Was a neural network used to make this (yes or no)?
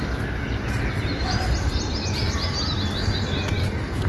no